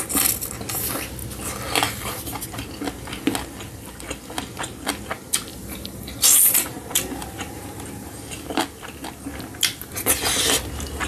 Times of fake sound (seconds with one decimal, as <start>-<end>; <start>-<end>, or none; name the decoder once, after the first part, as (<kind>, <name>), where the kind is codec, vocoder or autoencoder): 5.5-8.2 (vocoder, BigVGAN v2)